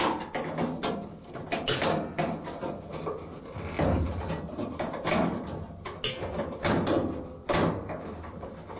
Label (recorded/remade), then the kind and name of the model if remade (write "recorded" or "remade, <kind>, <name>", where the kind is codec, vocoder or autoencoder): recorded